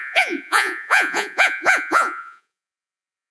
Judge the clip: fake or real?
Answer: fake